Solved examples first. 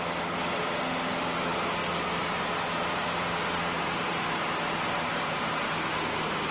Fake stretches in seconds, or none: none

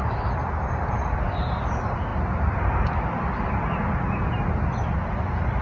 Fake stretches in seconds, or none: none

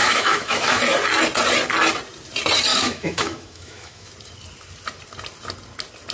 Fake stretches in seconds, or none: 0.0-0.8 (autoencoder, DAC-VAE); 2.7-4.1

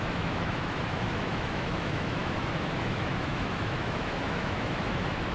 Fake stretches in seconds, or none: 0.0-5.3 (autoencoder, DAC-VAE)

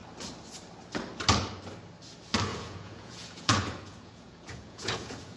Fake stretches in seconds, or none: 2.5-5.4 (vocoder, Vocos)

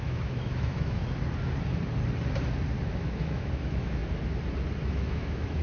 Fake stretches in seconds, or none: 0.0-1.0 (autoencoder, DAC-VAE); 2.8-4.0; 4.8-5.6

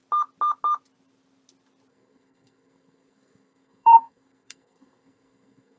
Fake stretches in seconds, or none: 1.9-5.8 (codec, SNAC)